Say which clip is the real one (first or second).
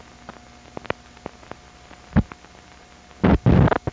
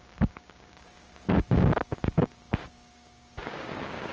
first